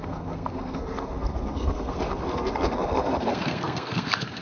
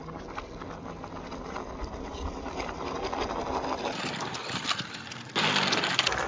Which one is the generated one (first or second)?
first